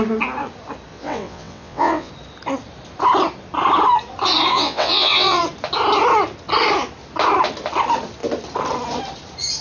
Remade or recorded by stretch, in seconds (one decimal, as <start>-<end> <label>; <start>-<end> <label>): 0.0-0.9 recorded; 0.9-2.1 remade; 2.1-4.5 recorded; 4.5-5.4 remade; 5.4-9.6 recorded